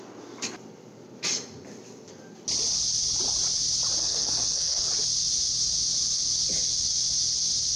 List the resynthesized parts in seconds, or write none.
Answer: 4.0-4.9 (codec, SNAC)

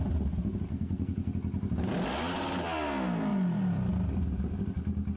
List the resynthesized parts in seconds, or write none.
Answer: 0.7-1.3 (codec, SNAC)

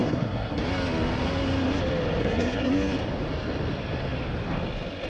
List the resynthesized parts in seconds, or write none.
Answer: 0.0-0.6 (codec, SNAC); 2.2-2.7